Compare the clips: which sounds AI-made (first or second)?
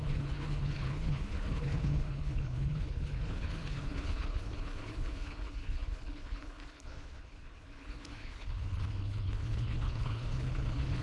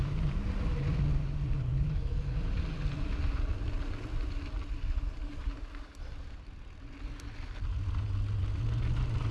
first